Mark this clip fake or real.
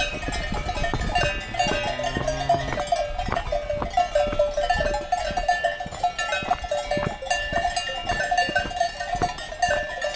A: real